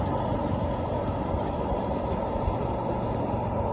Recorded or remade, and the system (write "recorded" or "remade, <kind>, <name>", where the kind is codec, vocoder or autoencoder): recorded